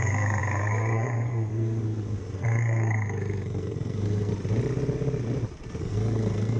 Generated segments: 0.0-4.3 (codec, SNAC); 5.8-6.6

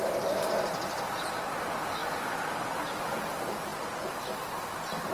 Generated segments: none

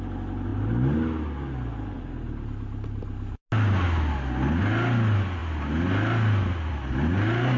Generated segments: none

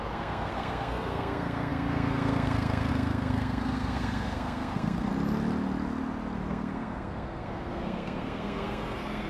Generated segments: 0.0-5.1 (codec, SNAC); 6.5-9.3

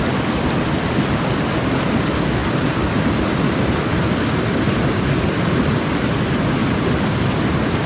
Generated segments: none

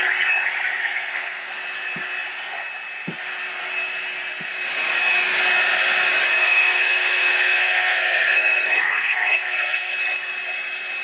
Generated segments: 0.8-1.5 (codec, SNAC); 6.4-9.9

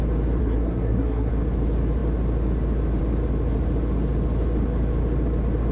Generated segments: 0.4-1.3 (codec, SNAC)

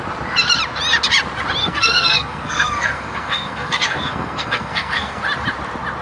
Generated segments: 1.6-5.2 (codec, SNAC)